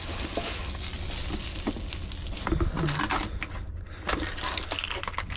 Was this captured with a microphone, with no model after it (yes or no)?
yes